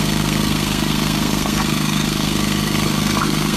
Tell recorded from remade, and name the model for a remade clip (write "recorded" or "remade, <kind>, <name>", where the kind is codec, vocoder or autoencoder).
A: remade, codec, SNAC